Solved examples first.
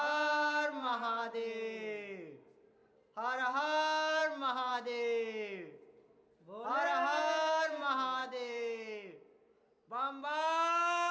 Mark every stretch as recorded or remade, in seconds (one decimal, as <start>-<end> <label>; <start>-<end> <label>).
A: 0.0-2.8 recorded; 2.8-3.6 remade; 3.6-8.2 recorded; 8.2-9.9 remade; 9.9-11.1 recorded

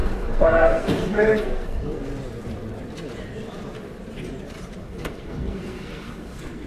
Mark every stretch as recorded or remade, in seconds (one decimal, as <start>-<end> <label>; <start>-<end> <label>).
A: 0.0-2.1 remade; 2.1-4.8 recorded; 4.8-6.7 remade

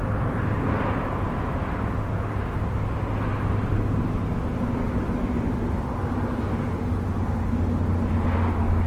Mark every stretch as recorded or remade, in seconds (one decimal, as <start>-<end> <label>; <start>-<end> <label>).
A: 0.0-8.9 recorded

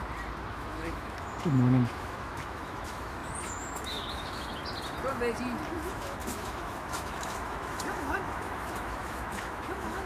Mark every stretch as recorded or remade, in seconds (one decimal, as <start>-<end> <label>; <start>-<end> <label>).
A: 0.0-0.5 recorded; 0.5-4.6 remade; 4.6-5.7 recorded; 5.7-10.1 remade